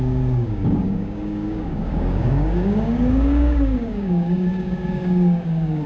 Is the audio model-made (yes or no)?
yes